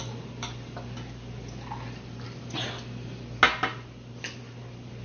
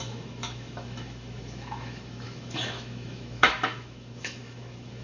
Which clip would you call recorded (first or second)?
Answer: first